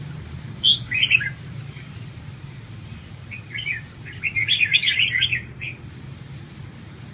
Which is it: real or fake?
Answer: real